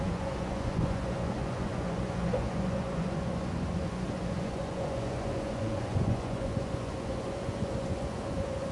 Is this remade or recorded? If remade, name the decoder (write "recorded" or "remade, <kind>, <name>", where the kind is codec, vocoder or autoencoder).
remade, vocoder, Vocos